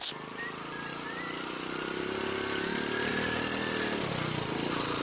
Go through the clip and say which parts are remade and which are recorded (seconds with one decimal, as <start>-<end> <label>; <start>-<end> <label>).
0.0-5.0 recorded